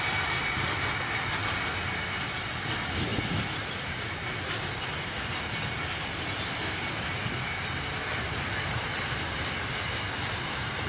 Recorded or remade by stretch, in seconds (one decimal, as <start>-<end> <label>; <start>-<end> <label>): 0.0-10.9 recorded